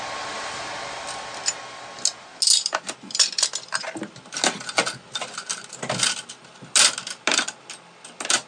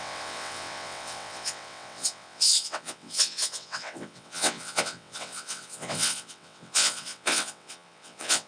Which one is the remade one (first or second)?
second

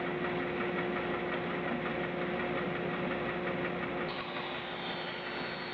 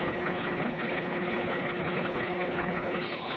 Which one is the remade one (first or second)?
second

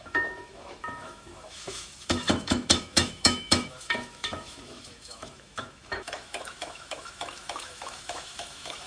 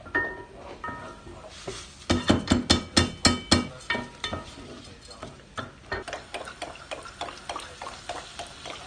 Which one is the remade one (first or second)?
first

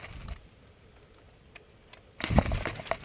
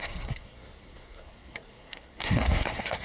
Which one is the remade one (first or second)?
second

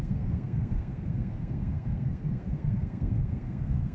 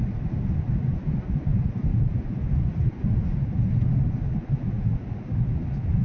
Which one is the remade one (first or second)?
first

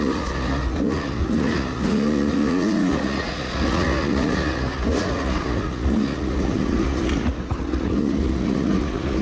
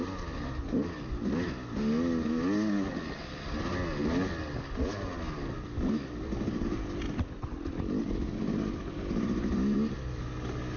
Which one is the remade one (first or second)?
first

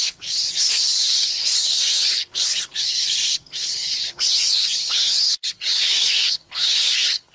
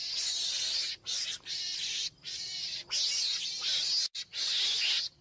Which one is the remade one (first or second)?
first